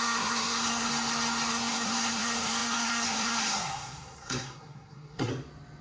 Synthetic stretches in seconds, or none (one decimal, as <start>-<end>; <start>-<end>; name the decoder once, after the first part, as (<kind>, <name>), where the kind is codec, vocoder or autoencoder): 0.0-0.9 (codec, SNAC); 1.5-5.3